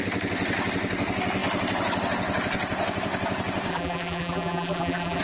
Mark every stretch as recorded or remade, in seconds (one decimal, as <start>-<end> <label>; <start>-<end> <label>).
0.0-3.7 recorded; 3.7-5.2 remade